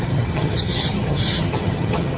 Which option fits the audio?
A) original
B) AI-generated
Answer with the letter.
B